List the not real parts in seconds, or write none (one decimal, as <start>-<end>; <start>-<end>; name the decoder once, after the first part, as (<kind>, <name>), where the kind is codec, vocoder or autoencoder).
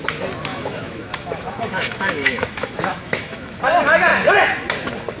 0.5-3.6 (autoencoder, DAC-VAE)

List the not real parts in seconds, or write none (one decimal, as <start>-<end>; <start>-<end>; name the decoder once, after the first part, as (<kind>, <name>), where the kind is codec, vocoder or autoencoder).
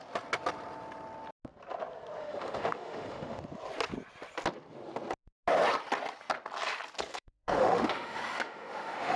2.2-3.4 (autoencoder, DAC-VAE); 7.1-9.2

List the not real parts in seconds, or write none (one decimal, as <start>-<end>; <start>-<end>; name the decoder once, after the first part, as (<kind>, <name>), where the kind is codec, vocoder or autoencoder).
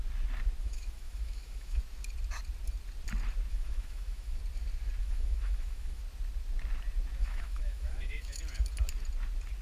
0.6-1.8 (autoencoder, DAC-VAE); 3.5-4.4; 5.0-6.0; 7.2-8.4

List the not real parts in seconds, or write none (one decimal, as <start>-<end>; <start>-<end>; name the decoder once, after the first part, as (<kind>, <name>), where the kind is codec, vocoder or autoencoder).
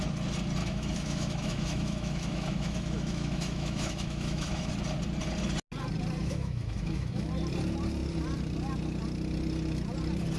0.6-4.7 (autoencoder, DAC-VAE); 6.2-7.3